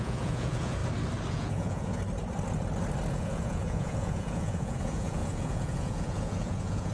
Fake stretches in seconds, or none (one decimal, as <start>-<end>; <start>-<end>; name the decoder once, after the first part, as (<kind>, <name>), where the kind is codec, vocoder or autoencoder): 0.0-0.8 (vocoder, Vocos); 1.3-2.0; 3.1-6.9